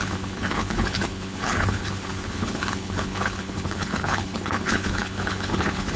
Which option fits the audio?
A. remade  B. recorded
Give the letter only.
A